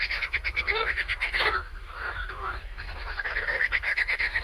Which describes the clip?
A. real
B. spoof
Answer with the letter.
B